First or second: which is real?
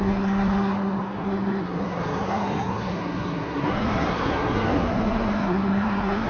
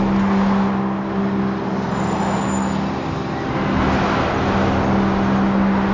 second